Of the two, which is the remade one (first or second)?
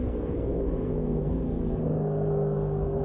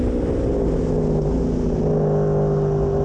first